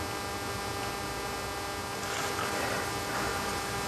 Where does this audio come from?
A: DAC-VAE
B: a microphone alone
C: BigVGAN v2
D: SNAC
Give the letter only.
B